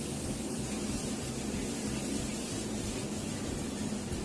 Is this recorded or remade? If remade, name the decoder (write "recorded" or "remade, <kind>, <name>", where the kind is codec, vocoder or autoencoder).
recorded